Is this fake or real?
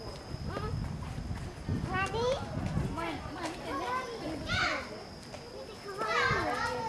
real